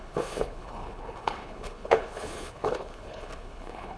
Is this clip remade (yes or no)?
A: yes